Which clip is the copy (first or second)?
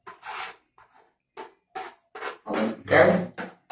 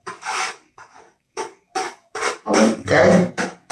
second